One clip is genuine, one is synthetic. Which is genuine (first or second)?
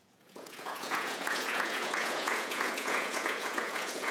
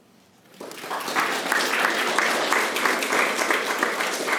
second